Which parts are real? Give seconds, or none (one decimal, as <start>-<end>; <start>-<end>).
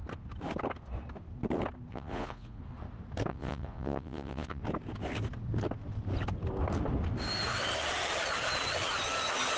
0.0-1.9; 2.6-3.3; 4.6-9.6